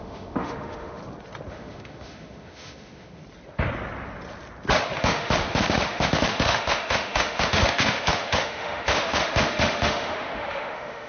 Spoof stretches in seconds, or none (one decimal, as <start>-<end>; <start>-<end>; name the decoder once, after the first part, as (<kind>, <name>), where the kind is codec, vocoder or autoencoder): 0.0-1.0 (autoencoder, DAC-VAE); 1.5-3.2; 5.0-11.1